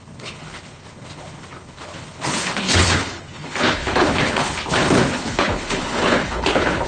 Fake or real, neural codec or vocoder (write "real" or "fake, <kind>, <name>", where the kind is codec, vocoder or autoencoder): fake, codec, HILCodec